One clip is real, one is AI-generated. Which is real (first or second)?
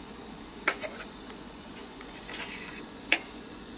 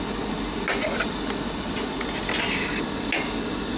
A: second